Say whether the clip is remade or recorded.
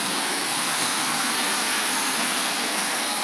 remade